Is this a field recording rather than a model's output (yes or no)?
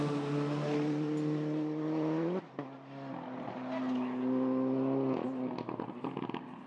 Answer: yes